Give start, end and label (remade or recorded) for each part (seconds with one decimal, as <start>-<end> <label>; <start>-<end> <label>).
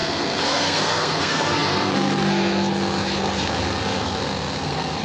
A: 0.0-5.0 remade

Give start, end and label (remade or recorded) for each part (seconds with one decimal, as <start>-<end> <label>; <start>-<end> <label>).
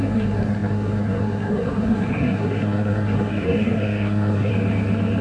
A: 0.0-4.5 remade; 4.5-5.2 recorded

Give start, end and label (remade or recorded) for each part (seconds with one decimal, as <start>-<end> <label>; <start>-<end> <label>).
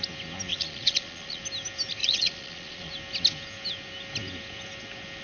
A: 0.0-0.5 recorded; 0.5-1.4 remade; 1.4-2.0 recorded; 2.0-2.9 remade; 2.9-5.2 recorded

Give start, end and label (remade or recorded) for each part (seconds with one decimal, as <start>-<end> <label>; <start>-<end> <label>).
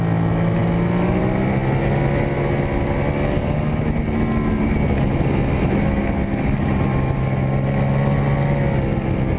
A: 0.0-9.4 recorded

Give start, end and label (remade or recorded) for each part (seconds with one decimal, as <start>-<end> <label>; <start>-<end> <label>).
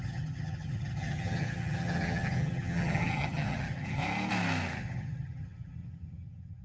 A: 0.0-4.0 remade; 4.0-4.8 recorded; 4.8-6.6 remade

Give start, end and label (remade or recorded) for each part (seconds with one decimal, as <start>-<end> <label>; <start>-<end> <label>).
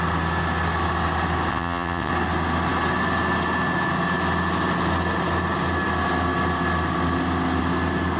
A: 0.0-1.5 recorded; 1.5-2.1 remade; 2.1-8.2 recorded